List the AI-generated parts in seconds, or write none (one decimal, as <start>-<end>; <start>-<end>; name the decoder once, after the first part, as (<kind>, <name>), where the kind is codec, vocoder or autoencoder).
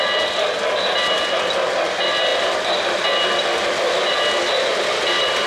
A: none